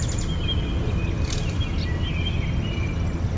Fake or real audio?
real